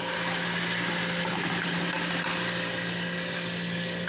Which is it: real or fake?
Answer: real